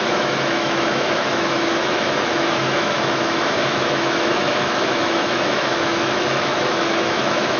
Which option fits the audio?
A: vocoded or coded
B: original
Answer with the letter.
A